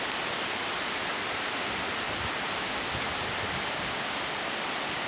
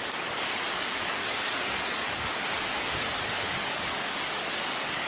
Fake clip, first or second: second